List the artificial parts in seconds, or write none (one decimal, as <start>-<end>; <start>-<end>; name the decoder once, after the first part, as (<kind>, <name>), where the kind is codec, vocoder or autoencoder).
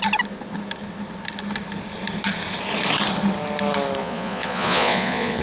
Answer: 4.0-5.4 (vocoder, Vocos)